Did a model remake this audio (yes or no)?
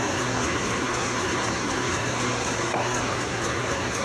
yes